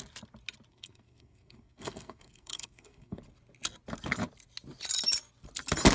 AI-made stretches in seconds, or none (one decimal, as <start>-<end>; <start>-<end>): 0.7-3.2